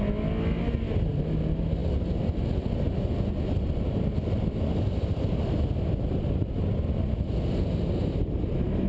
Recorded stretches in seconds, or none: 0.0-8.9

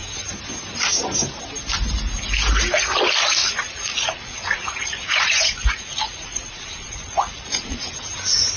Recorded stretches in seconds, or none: 0.0-3.4; 7.9-8.6

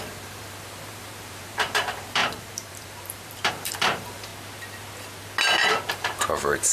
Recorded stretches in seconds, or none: 4.3-5.9

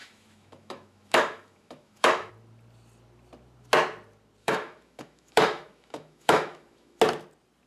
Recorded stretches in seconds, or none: 2.3-4.4; 7.0-7.7

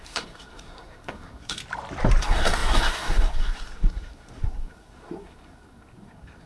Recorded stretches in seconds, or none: 1.6-2.2

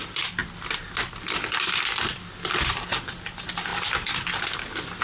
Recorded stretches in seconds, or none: none

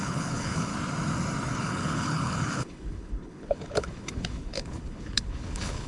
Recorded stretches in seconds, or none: 0.7-1.6

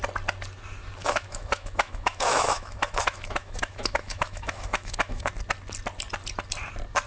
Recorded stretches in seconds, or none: 0.0-1.0; 5.3-7.1